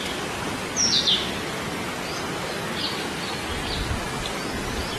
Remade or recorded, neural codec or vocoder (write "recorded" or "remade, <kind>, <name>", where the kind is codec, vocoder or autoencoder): recorded